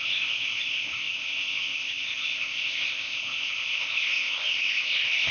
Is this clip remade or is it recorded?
remade